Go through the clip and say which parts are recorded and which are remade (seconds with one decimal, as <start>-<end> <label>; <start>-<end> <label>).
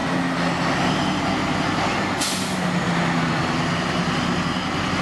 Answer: 0.0-5.0 recorded